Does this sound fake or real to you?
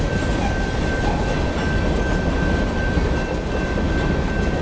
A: real